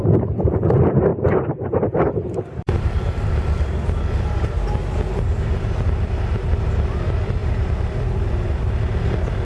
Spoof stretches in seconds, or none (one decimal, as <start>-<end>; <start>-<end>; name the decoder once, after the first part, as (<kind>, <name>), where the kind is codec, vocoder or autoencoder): 1.1-5.6 (vocoder, BigVGAN v2); 7.4-8.7